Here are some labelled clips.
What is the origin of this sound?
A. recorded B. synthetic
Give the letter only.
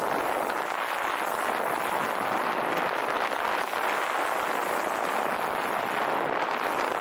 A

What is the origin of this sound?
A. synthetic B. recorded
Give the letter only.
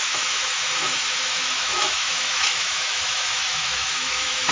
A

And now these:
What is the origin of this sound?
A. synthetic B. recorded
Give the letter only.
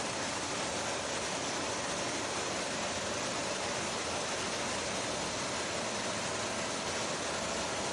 B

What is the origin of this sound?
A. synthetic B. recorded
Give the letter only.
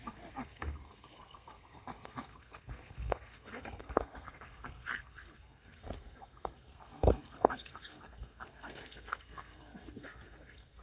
A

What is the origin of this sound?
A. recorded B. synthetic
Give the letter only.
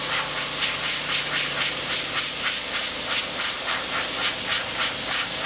A